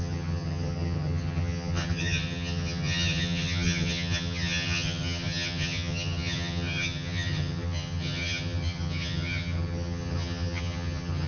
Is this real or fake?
fake